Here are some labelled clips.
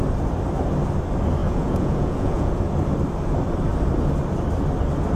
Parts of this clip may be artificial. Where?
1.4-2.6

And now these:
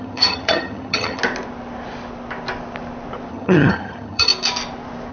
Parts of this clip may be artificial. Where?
0.0-1.2; 3.3-4.3

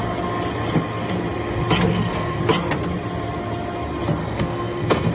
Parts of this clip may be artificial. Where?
1.9-2.4; 4.2-5.1

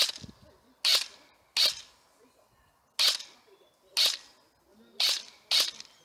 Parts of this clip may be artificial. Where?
4.7-5.5

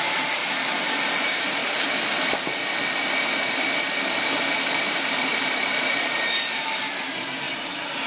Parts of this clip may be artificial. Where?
0.0-0.4; 1.1-1.6; 4.2-8.1

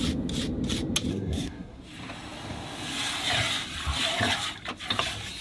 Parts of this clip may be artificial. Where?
1.1-1.8

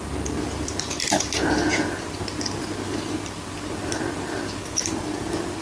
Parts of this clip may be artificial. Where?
none